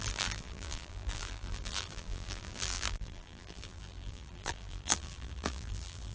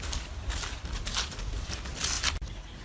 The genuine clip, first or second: second